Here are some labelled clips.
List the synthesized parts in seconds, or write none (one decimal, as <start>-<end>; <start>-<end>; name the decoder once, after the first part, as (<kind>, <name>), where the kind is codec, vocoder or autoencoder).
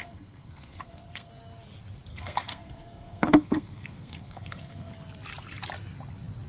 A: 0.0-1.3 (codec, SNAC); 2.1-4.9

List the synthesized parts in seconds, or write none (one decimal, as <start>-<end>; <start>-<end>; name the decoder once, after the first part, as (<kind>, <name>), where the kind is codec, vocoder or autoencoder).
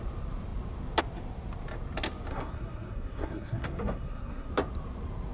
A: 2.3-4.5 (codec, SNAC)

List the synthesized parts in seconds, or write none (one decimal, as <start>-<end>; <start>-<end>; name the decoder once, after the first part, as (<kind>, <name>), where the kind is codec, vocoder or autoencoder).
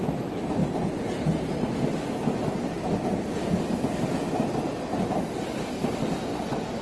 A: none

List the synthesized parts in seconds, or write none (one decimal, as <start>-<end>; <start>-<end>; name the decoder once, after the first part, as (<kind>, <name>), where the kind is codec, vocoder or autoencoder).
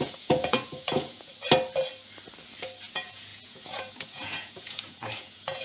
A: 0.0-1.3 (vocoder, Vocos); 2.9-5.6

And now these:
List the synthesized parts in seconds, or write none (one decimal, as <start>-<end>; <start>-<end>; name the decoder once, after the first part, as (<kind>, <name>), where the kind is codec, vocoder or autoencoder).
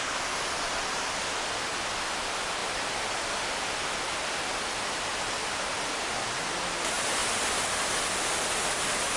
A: none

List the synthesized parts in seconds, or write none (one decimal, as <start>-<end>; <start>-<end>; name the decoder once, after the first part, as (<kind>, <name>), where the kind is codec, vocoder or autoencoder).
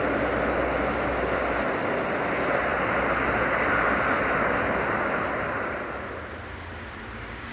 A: none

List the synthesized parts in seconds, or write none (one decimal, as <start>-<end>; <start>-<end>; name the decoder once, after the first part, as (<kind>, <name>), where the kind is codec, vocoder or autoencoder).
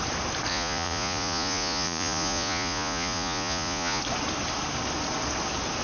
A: 0.5-4.0 (vocoder, Vocos)